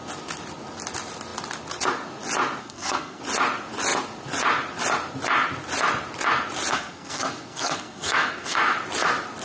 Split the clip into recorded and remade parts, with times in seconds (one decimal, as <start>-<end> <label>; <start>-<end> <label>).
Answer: 0.0-2.6 recorded; 2.6-3.2 remade; 3.2-6.7 recorded; 6.7-8.6 remade; 8.6-9.4 recorded